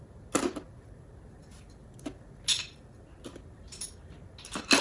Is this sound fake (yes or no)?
no